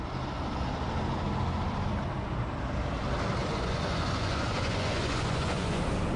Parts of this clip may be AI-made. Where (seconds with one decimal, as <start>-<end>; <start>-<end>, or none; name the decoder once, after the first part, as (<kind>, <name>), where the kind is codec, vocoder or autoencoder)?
3.4-5.8 (vocoder, Vocos)